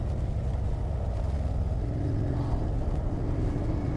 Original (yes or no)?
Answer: yes